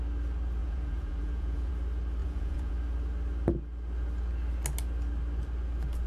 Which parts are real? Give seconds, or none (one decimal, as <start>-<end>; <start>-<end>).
0.0-0.6; 1.7-2.2; 2.7-6.1